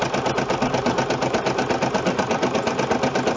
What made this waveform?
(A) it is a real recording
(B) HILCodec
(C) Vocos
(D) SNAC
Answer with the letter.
A